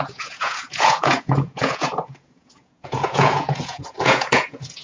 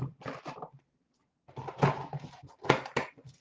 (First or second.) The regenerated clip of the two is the first